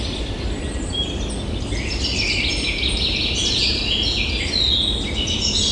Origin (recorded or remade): recorded